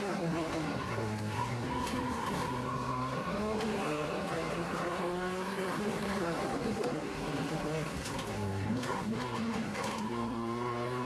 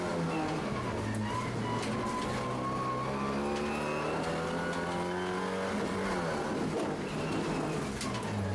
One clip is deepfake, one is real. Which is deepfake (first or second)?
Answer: first